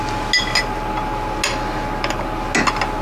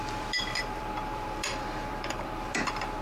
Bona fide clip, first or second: first